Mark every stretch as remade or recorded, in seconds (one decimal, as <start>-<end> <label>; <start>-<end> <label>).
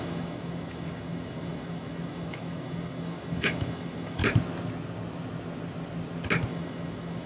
0.0-4.2 remade; 4.2-6.5 recorded; 6.5-7.3 remade